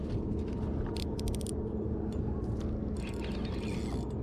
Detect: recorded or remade recorded